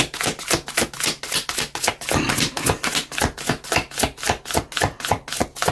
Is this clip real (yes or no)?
yes